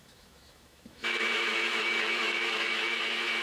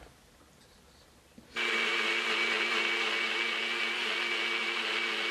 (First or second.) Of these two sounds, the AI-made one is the first